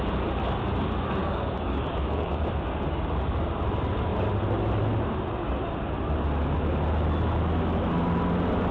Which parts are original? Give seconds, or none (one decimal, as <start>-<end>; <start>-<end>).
0.0-1.2; 2.5-8.7